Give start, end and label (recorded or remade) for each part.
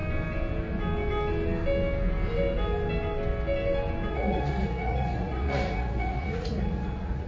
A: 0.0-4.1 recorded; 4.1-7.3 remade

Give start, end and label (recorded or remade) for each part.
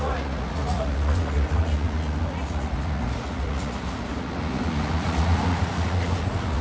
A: 0.0-6.6 remade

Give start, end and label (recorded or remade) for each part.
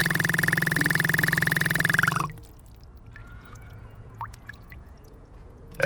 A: 0.0-3.2 recorded; 3.2-5.9 remade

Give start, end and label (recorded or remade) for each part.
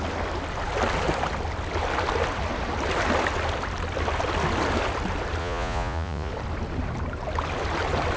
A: 0.0-5.4 recorded; 5.4-6.3 remade; 6.3-8.2 recorded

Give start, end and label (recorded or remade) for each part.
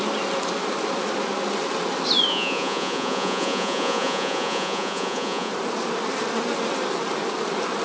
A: 0.0-2.3 recorded; 2.3-5.5 remade; 5.5-7.8 recorded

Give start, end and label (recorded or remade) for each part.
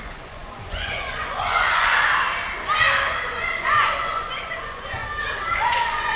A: 0.0-2.1 remade; 2.1-3.3 recorded; 3.3-5.0 remade; 5.0-5.5 recorded; 5.5-6.2 remade